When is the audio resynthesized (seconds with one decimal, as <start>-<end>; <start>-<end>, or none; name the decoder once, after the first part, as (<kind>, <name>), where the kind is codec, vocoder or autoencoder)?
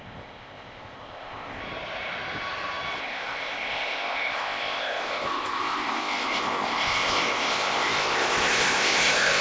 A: 0.0-1.6 (codec, ZipCodec); 3.0-9.4